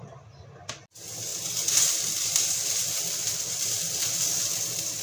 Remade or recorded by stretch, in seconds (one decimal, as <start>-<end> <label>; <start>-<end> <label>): 0.0-5.0 recorded